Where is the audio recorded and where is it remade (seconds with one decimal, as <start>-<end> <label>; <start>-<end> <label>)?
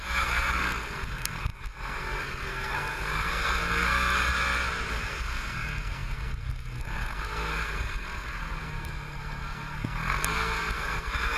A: 0.0-4.3 remade; 4.3-4.9 recorded; 4.9-11.4 remade